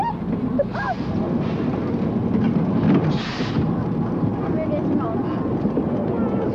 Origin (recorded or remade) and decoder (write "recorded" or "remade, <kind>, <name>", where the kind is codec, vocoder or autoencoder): recorded